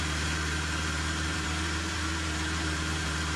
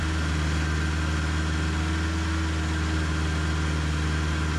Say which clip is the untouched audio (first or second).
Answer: second